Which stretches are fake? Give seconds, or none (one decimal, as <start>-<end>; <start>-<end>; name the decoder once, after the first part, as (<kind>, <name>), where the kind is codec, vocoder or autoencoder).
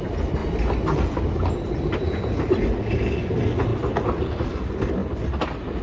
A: none